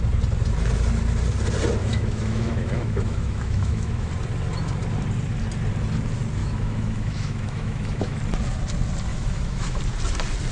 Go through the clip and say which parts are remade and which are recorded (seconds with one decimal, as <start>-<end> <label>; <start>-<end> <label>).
0.0-1.8 recorded; 1.8-4.1 remade; 4.1-6.4 recorded; 6.4-8.2 remade; 8.2-9.1 recorded; 9.1-9.8 remade; 9.8-10.5 recorded